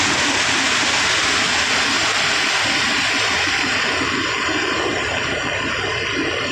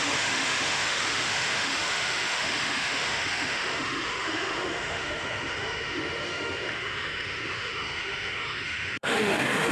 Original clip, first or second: first